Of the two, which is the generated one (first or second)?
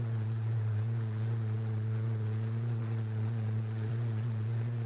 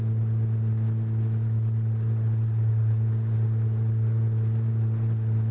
first